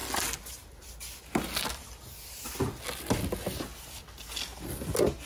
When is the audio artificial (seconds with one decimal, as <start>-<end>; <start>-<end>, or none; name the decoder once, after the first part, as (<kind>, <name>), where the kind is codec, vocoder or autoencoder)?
none